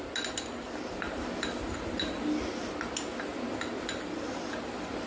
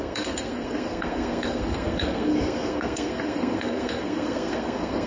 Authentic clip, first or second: first